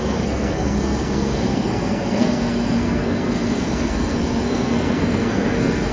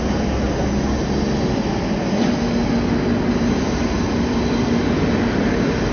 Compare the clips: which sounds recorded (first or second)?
second